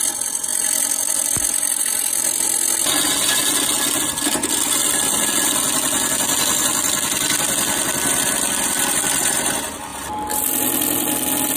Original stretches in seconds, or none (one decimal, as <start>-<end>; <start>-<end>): 0.0-11.6